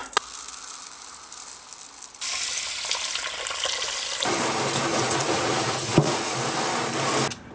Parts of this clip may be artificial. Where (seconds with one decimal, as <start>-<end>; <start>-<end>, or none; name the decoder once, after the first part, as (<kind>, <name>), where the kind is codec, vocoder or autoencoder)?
4.9-6.4 (vocoder, Vocos)